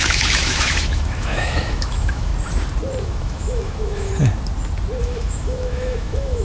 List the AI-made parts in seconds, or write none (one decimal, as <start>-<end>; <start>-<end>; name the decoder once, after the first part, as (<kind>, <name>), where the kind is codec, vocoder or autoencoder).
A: 0.0-2.3 (autoencoder, DAC-VAE); 3.0-4.1; 5.0-6.4